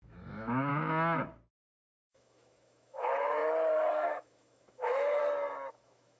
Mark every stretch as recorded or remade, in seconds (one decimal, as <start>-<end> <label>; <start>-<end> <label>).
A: 0.0-0.7 remade; 0.7-1.5 recorded; 1.5-3.4 remade; 3.4-3.9 recorded; 3.9-5.2 remade; 5.2-5.7 recorded; 5.7-6.2 remade